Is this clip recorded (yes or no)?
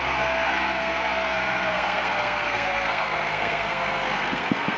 no